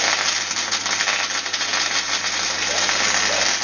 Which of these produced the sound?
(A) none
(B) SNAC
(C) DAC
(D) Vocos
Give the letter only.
A